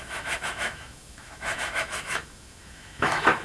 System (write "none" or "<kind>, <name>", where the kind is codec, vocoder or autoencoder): autoencoder, DAC-VAE